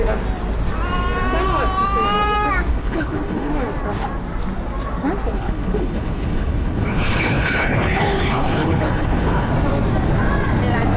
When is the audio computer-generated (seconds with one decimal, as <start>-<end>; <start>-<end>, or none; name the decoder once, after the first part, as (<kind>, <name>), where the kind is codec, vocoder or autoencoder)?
2.7-3.5 (codec, HILCodec); 5.3-9.5